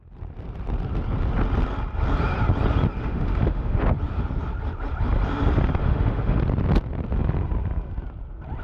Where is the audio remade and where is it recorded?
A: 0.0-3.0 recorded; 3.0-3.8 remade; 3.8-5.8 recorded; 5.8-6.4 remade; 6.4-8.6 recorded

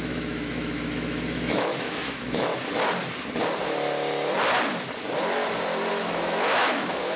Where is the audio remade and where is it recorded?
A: 0.0-2.5 remade; 2.5-5.9 recorded; 5.9-7.2 remade

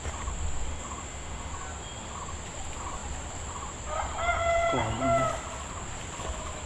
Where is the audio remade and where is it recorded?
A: 0.0-0.7 recorded; 0.7-1.5 remade; 1.5-6.7 recorded

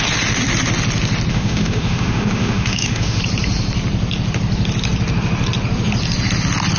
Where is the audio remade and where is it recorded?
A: 0.0-1.3 recorded; 1.3-3.2 remade; 3.2-6.8 recorded

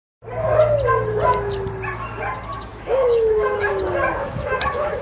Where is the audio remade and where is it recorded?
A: 0.0-2.7 recorded; 2.7-3.7 remade; 3.7-4.2 recorded; 4.2-5.0 remade

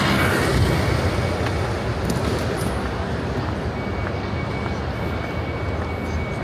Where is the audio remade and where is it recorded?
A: 0.0-6.4 recorded